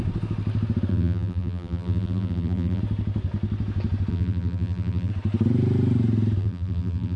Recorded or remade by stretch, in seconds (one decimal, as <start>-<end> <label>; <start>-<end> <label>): 0.0-0.9 recorded; 0.9-2.8 remade; 2.8-4.1 recorded; 4.1-5.1 remade; 5.1-6.4 recorded; 6.4-7.2 remade